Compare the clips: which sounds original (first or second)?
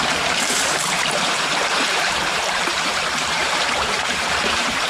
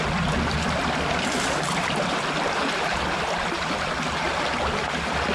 second